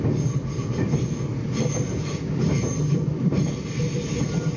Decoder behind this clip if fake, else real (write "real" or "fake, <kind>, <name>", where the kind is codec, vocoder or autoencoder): real